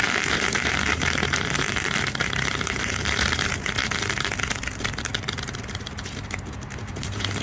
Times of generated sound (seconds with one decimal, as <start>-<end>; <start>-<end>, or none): 0.0-3.8; 5.0-7.4